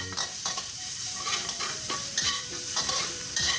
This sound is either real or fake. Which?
fake